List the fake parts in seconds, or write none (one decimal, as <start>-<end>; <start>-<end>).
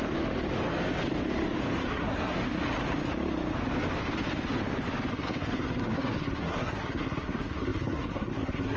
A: 1.8-2.4; 5.1-8.8